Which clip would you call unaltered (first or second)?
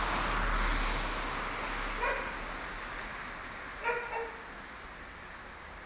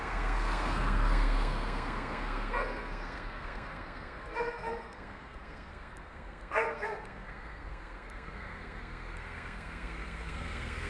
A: first